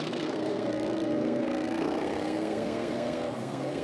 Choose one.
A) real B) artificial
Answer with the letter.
B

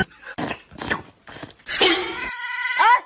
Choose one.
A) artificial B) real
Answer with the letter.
B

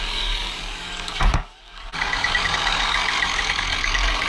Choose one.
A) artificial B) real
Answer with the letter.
A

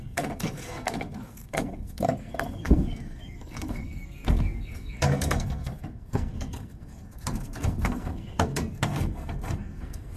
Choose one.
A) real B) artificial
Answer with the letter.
B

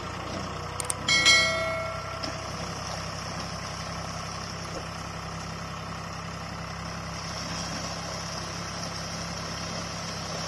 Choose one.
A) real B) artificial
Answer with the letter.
A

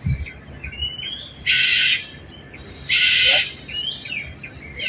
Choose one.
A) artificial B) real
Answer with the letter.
B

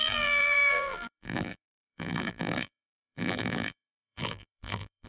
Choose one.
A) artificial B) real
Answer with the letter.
A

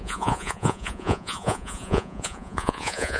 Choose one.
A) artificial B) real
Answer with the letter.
A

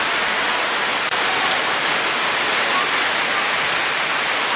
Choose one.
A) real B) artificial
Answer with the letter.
A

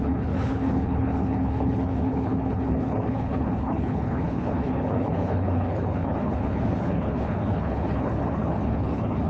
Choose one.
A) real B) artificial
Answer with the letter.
B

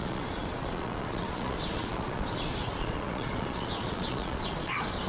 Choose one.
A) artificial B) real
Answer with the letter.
A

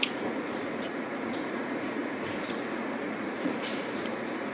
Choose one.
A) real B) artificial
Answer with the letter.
B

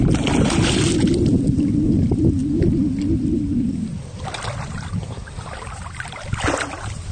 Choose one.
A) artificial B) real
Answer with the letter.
B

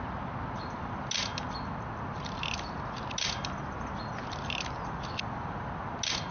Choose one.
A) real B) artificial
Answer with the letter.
A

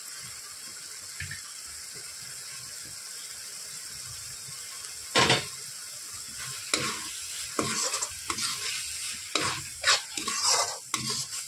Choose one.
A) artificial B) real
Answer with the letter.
B